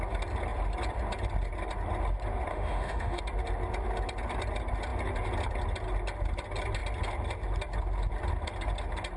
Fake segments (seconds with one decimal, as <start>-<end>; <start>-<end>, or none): 2.5-3.2